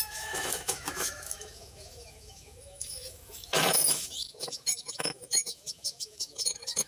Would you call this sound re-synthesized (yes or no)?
yes